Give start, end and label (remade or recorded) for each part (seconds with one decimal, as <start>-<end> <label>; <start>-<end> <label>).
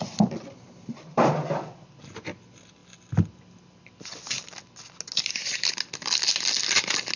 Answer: 0.0-7.2 recorded